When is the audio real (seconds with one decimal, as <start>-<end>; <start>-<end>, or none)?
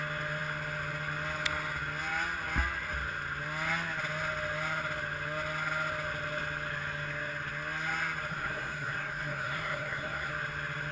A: 0.0-8.3; 10.3-10.9